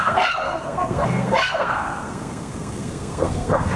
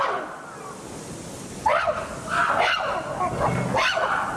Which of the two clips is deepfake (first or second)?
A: first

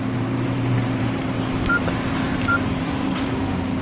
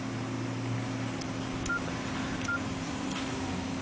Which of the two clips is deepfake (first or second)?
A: first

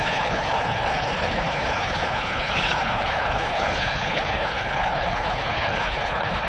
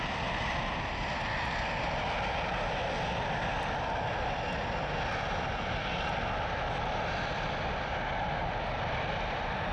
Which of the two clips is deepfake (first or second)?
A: first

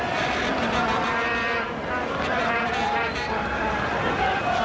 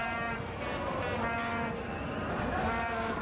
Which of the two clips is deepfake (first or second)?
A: first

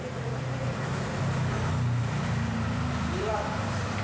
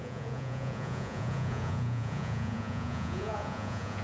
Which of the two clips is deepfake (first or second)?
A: second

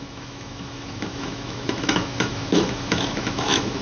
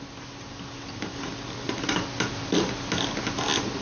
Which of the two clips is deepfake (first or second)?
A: first